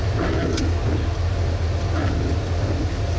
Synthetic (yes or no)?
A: no